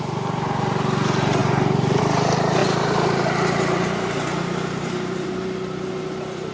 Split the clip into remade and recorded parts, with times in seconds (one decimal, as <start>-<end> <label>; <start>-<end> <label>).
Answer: 0.0-1.4 recorded; 1.4-2.0 remade; 2.0-2.6 recorded; 2.6-5.4 remade; 5.4-6.5 recorded